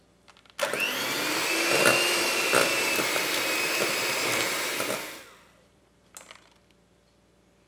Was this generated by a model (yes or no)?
no